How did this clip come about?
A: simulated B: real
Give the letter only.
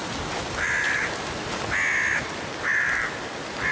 B